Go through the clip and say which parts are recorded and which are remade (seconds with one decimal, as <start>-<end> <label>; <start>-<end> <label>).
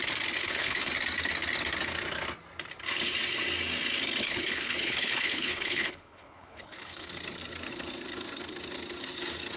0.0-0.4 recorded; 0.4-0.9 remade; 0.9-4.2 recorded; 4.2-7.1 remade; 7.1-9.6 recorded